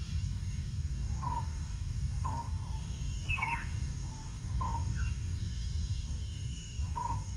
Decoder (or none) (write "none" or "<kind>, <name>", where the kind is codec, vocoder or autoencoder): codec, DAC